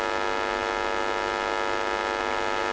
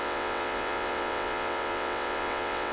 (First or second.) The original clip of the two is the first